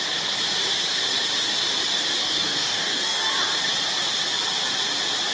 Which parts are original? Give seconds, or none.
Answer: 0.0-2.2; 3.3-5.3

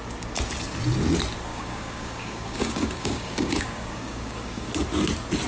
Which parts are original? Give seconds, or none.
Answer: 0.0-1.5; 4.7-5.5

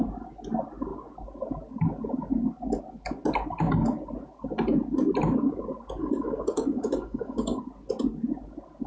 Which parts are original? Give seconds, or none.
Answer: 0.0-6.0; 7.6-8.9

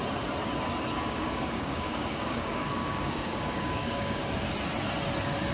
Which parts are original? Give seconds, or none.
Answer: 0.0-0.9; 4.2-5.5

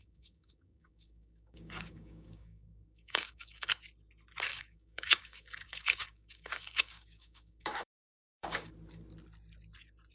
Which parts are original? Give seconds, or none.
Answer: 3.7-4.5; 8.7-10.1

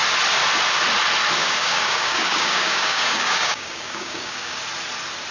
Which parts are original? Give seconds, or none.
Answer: 0.0-1.4; 4.6-5.3

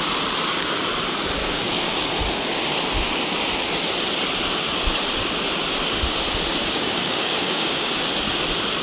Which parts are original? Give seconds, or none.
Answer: 0.0-1.4; 2.1-6.6; 7.9-8.8

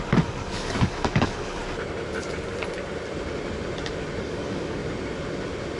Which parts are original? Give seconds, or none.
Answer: 1.6-4.2; 4.8-5.8